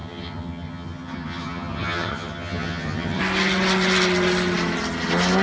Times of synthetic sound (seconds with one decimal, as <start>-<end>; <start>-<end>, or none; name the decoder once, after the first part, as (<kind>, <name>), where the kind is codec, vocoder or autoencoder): 0.0-3.2 (vocoder, HiFi-GAN)